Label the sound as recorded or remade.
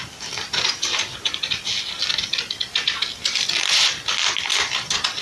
recorded